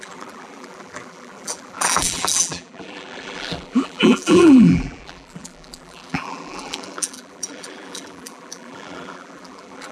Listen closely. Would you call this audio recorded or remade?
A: remade